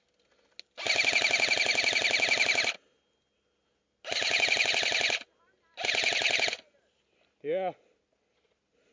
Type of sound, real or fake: real